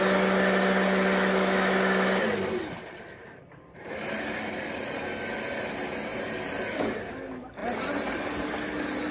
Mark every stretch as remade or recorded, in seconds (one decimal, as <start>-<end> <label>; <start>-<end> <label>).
0.0-9.1 recorded